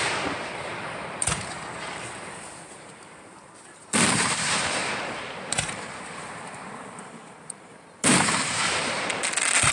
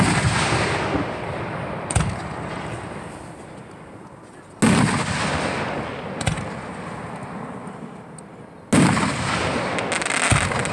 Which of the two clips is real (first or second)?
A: second